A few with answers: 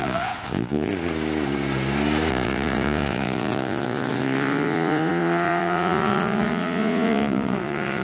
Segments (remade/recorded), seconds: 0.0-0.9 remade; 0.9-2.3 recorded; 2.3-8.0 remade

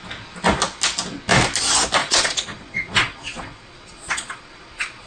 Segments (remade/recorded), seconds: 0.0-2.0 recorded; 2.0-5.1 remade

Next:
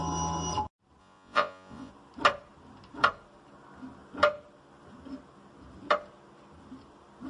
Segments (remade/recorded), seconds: 0.0-1.0 recorded; 1.0-1.9 remade; 1.9-7.3 recorded